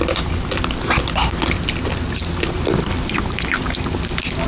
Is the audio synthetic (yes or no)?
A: no